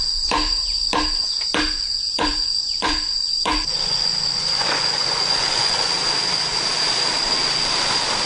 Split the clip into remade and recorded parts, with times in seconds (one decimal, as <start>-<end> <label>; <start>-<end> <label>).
0.0-1.9 recorded; 1.9-5.9 remade; 5.9-8.3 recorded